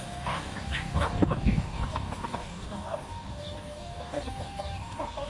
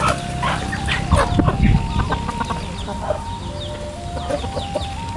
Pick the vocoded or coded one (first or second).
first